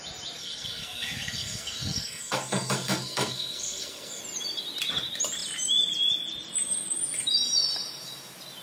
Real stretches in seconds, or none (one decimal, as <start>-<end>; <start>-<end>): 0.0-0.4; 4.2-8.6